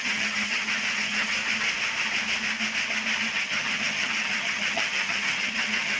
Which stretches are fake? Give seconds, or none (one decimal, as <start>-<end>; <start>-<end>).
0.0-1.4; 3.2-6.0